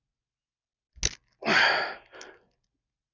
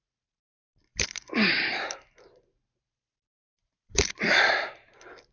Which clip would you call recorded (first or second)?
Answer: first